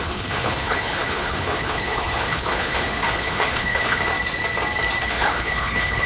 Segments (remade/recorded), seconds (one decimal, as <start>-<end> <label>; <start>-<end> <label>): 0.0-4.1 remade; 4.1-5.0 recorded; 5.0-6.1 remade

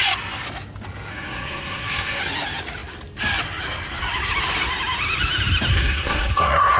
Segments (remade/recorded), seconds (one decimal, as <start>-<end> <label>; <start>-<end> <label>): 0.0-1.1 recorded; 1.1-2.2 remade; 2.2-5.7 recorded; 5.7-6.8 remade